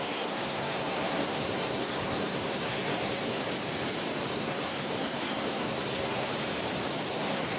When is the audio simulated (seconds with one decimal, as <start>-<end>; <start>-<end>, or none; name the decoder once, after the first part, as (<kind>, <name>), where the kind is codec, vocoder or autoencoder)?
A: 0.0-3.4 (codec, SNAC); 4.3-6.3; 7.1-7.6